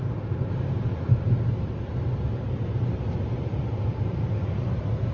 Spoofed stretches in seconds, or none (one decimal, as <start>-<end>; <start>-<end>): none